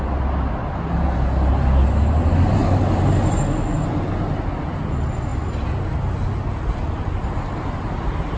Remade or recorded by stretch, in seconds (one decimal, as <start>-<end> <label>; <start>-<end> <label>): 0.0-2.6 recorded; 2.6-3.4 remade; 3.4-8.4 recorded